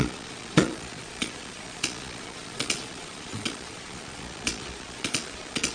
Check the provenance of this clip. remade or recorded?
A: remade